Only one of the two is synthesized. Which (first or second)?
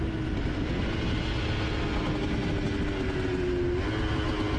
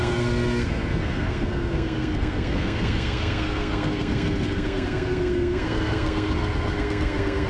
second